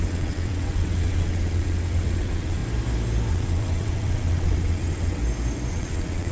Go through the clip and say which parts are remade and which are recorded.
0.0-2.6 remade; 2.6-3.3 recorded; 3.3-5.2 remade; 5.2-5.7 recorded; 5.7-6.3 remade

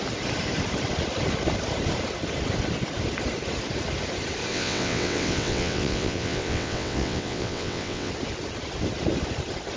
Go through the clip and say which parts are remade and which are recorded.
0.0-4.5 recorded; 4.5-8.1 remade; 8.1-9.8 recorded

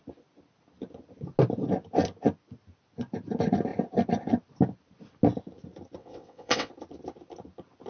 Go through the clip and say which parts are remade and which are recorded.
0.0-6.0 recorded; 6.0-6.7 remade; 6.7-7.9 recorded

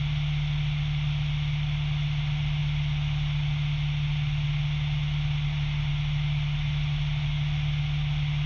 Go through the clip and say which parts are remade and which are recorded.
0.0-8.5 recorded